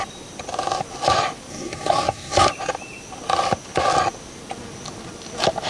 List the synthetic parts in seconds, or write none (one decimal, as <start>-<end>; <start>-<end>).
1.5-2.5